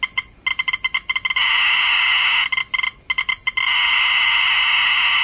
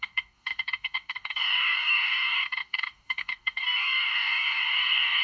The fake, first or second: second